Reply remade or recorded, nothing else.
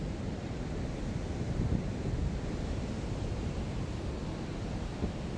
recorded